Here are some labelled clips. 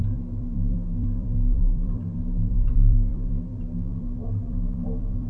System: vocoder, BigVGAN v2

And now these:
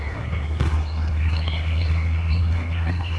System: codec, SNAC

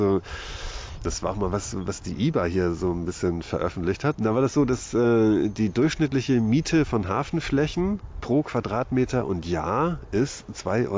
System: none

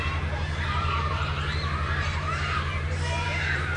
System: vocoder, BigVGAN v2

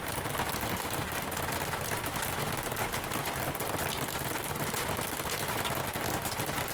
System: none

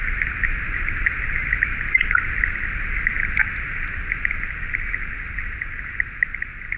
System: none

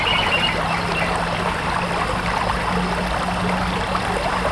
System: none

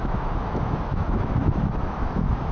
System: autoencoder, DAC-VAE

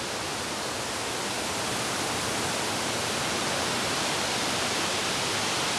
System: none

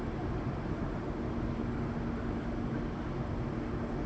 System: none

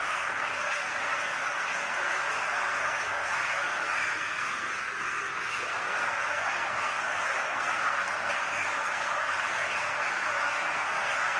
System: codec, SNAC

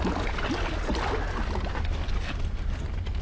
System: none